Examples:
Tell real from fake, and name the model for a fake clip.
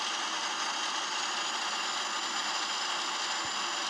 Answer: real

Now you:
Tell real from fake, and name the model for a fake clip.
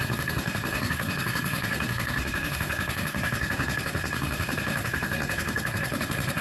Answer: fake, codec, SNAC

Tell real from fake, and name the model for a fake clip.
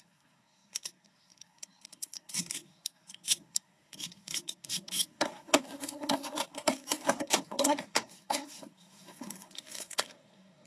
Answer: fake, codec, SNAC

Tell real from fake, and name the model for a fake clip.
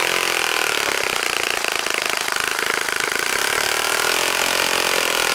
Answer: real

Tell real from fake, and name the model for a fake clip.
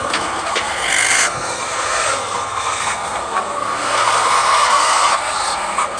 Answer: fake, codec, SNAC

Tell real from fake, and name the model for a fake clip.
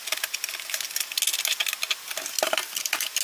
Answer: real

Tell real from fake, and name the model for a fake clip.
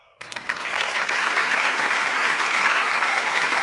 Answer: fake, codec, SNAC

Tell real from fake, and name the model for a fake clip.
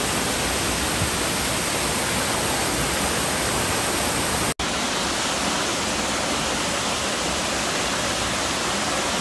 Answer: real